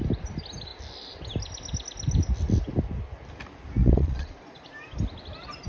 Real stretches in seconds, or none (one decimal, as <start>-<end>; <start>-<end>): 0.0-3.8; 4.7-5.7